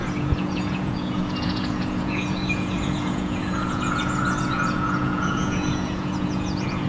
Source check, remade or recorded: remade